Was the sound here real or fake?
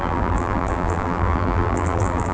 fake